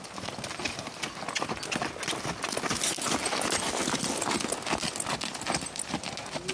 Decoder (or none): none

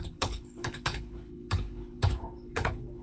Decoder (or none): codec, HILCodec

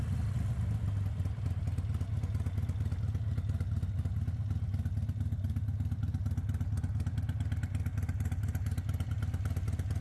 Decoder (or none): none